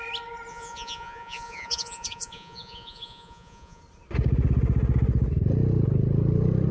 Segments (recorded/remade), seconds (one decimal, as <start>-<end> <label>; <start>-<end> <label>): 0.0-0.5 recorded; 0.5-3.8 remade; 3.8-6.7 recorded